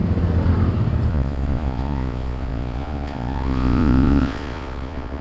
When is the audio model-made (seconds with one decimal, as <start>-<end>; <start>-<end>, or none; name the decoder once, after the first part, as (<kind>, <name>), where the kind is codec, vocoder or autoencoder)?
1.1-5.2 (vocoder, Vocos)

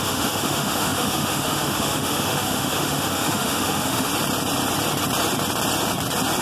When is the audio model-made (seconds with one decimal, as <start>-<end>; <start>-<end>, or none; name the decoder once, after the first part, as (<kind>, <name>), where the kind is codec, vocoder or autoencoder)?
0.0-4.1 (autoencoder, DAC-VAE)

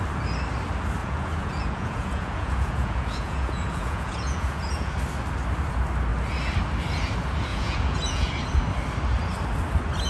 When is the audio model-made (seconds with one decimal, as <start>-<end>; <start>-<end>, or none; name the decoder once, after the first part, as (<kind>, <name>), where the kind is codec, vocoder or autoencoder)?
1.0-4.9 (vocoder, Vocos); 7.5-8.3